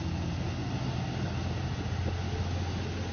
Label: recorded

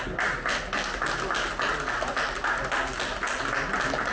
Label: recorded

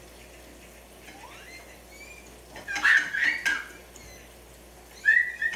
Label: recorded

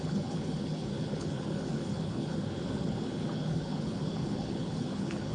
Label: remade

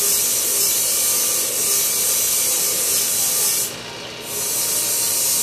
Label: recorded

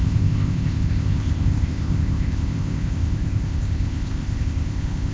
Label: remade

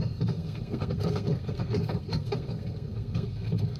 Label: remade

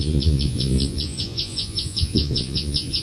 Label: remade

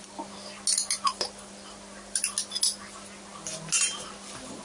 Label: recorded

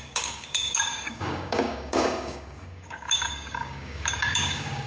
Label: remade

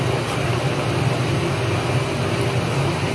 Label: recorded